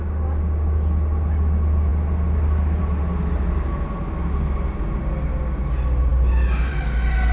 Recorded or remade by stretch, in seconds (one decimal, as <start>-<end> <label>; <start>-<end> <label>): 0.0-7.3 recorded